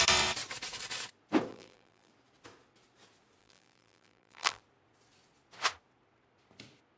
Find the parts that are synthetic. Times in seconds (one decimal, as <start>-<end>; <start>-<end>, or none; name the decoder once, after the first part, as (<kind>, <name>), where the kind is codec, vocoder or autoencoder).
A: 1.5-2.1 (vocoder, BigVGAN v2); 3.4-4.6